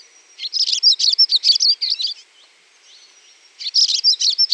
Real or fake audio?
real